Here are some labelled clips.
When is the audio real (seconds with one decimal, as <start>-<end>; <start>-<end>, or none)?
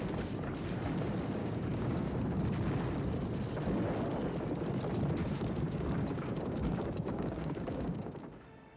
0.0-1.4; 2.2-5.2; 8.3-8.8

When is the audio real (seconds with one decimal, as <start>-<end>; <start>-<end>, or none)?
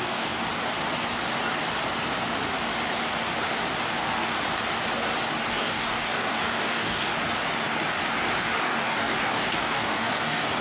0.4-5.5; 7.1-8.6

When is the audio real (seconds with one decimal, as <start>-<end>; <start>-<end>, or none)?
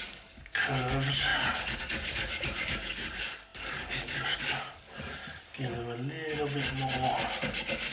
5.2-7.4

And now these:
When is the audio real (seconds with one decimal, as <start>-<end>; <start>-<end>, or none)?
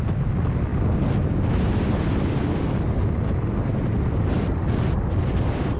0.0-5.8